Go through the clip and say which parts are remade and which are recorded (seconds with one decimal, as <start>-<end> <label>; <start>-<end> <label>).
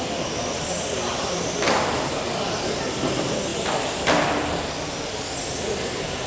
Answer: 0.0-1.1 recorded; 1.1-2.6 remade; 2.6-6.3 recorded